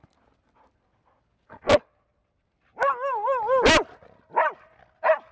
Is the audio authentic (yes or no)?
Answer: yes